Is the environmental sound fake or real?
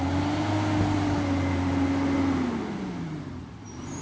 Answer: real